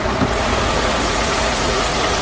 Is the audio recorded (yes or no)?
no